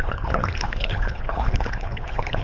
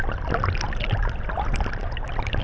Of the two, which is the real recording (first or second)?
second